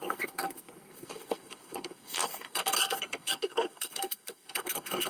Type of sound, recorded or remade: remade